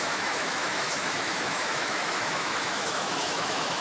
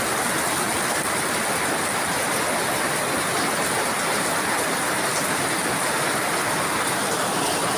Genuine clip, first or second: second